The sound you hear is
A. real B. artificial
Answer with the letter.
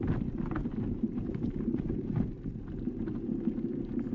A